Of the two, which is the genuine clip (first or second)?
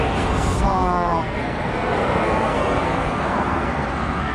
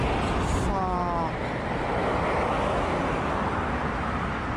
second